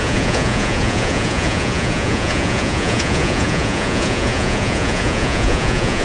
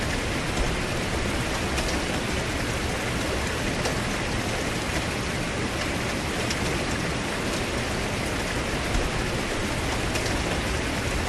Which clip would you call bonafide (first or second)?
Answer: second